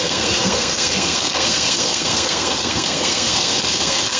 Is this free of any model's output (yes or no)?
no